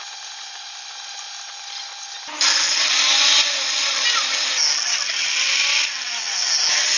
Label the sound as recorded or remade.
recorded